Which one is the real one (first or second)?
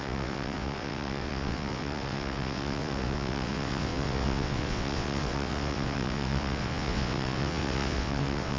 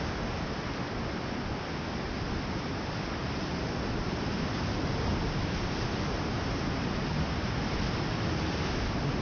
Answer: second